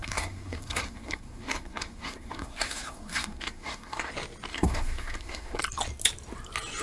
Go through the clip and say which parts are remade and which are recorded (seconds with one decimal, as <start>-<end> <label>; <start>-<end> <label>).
0.0-4.1 remade; 4.1-4.5 recorded; 4.5-5.6 remade; 5.6-6.8 recorded